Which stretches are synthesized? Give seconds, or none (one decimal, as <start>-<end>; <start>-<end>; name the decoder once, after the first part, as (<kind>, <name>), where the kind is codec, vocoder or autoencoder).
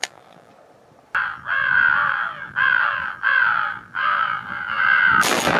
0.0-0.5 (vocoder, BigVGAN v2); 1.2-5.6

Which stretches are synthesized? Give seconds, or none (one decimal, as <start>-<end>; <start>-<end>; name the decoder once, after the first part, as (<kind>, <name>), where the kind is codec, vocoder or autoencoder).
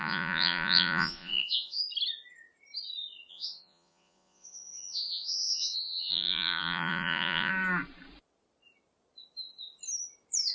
0.0-1.8 (vocoder, Vocos); 3.3-7.5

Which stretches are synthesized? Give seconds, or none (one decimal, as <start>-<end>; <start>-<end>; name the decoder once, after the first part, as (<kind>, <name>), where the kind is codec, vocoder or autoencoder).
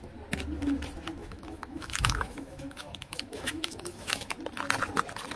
1.2-4.4 (autoencoder, DAC-VAE)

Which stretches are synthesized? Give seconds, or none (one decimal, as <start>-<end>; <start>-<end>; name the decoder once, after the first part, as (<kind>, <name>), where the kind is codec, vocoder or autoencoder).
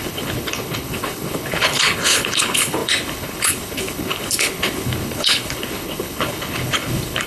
0.0-7.3 (codec, HILCodec)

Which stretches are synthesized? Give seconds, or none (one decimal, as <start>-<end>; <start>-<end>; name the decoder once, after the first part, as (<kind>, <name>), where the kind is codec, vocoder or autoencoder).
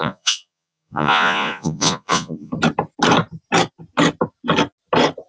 0.0-2.5 (vocoder, Vocos)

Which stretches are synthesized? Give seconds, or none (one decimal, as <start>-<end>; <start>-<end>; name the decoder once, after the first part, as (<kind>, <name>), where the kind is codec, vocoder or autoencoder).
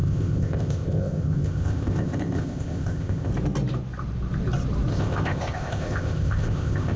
0.0-3.3 (codec, ZipCodec); 4.9-7.0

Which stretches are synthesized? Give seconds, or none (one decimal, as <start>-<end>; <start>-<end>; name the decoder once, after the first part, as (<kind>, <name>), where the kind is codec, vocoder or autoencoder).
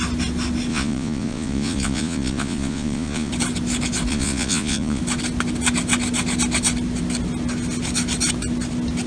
0.7-3.3 (vocoder, Vocos); 4.1-5.0